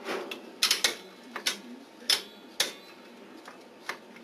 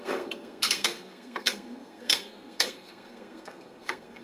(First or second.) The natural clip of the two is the first